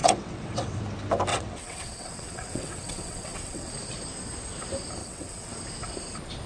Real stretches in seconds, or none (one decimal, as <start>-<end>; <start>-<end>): 0.8-1.3; 3.7-5.0; 5.5-6.5